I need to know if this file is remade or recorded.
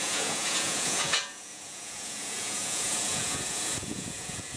remade